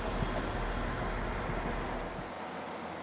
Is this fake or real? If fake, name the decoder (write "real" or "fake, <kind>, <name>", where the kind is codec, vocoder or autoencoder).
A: real